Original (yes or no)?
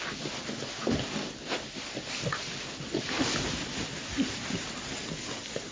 yes